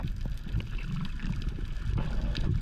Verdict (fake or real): real